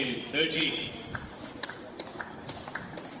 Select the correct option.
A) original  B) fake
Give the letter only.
B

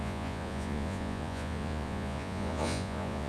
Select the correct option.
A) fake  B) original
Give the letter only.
A